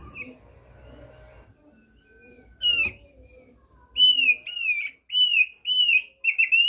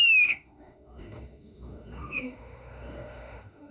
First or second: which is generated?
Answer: second